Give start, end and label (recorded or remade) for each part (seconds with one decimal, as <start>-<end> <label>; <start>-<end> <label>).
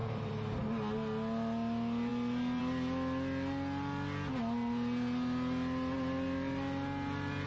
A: 0.0-0.7 remade; 0.7-7.5 recorded